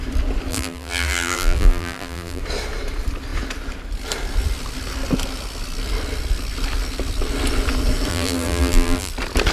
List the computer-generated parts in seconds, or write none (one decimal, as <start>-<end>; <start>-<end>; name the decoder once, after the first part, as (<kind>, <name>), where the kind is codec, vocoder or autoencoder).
0.5-2.4 (vocoder, BigVGAN v2); 8.1-9.1